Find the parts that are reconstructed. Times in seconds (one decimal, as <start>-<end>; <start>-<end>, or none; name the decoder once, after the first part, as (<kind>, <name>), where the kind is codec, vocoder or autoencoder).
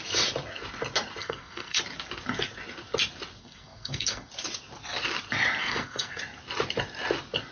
1.2-1.8 (codec, SNAC); 3.4-4.3; 5.6-6.2